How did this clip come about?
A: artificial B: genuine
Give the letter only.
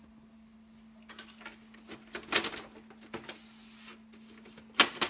B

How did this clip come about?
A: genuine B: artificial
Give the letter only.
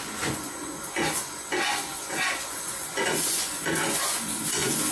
B